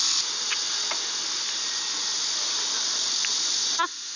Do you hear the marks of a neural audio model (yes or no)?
no